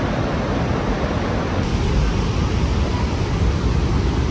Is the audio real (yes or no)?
yes